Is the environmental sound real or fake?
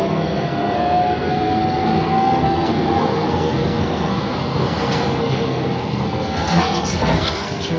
fake